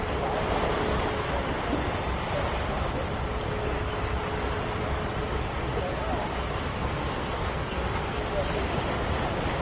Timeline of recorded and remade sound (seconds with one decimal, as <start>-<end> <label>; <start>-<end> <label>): 0.0-6.7 recorded; 6.7-8.2 remade; 8.2-9.6 recorded